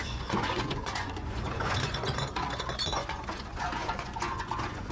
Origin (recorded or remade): remade